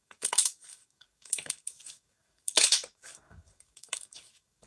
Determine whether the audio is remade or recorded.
remade